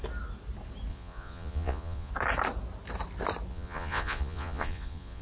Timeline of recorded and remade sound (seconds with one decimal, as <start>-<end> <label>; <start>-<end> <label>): 0.0-0.9 recorded; 0.9-2.1 remade; 2.1-3.5 recorded; 3.5-5.2 remade